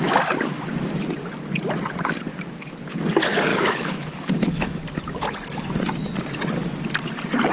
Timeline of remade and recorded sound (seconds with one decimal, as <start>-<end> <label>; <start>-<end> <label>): 0.0-3.5 recorded; 3.5-4.8 remade; 4.8-7.5 recorded